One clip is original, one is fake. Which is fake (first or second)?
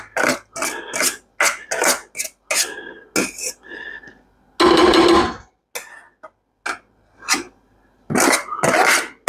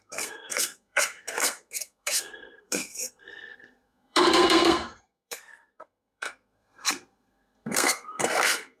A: second